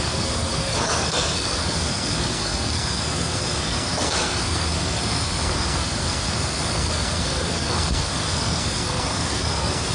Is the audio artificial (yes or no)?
yes